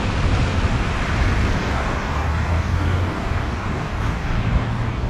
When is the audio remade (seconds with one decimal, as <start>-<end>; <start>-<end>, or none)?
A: 1.6-5.1